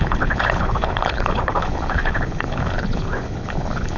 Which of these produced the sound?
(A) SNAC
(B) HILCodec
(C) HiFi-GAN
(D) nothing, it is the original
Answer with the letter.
B